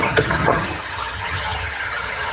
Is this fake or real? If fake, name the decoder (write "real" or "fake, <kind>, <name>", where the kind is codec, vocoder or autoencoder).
fake, vocoder, HiFi-GAN